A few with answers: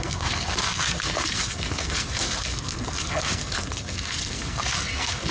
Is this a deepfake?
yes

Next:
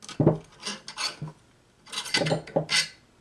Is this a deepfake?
no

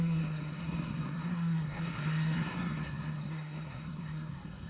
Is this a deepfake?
yes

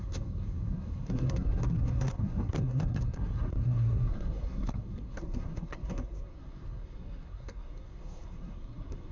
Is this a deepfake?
yes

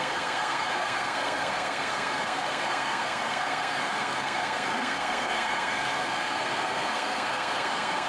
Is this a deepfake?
yes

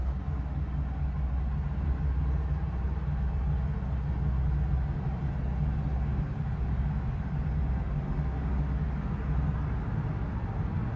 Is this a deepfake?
no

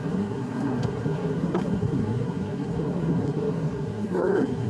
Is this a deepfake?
yes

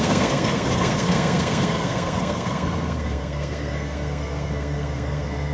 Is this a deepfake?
yes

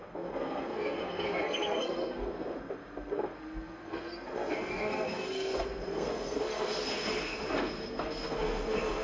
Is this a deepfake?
yes